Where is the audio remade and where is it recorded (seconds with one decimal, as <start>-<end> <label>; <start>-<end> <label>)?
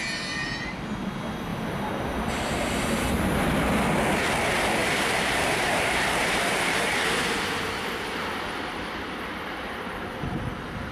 0.0-1.5 recorded; 1.5-2.9 remade; 2.9-4.8 recorded; 4.8-7.8 remade; 7.8-10.9 recorded